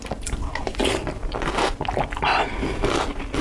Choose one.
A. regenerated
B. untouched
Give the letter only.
B